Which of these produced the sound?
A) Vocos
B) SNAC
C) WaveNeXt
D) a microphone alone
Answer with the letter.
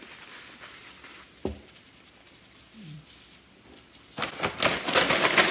D